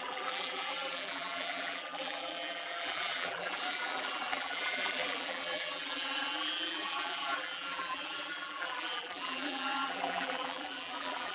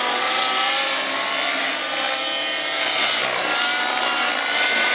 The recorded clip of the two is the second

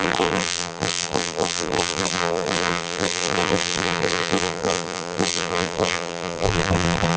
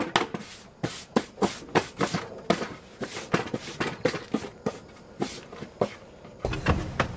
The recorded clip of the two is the second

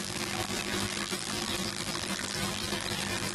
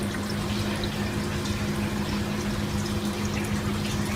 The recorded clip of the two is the second